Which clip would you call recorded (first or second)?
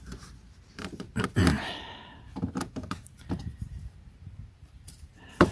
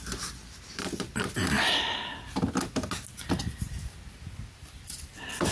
second